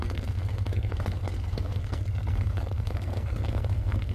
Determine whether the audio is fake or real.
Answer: fake